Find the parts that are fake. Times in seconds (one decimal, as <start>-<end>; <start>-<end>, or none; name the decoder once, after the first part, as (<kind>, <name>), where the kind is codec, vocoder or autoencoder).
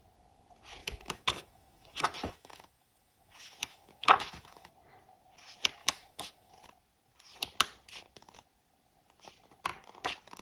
0.8-4.7 (autoencoder, DAC-VAE); 5.8-6.5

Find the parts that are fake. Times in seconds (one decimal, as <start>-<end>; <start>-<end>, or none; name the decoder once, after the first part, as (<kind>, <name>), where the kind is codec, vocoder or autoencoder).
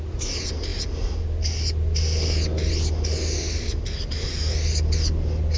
none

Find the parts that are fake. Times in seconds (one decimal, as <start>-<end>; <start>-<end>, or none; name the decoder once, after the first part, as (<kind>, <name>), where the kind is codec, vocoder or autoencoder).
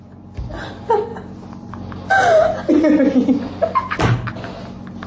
none